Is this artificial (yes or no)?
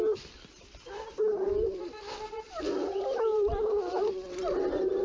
yes